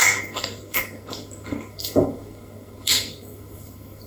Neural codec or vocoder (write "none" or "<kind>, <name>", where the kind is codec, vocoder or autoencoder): codec, SNAC